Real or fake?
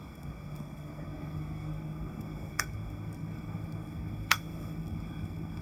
fake